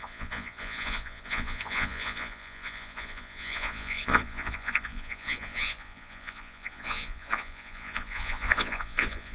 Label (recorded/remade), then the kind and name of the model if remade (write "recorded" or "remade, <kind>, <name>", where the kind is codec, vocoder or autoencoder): remade, vocoder, Vocos